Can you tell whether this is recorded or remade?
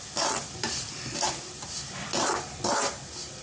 remade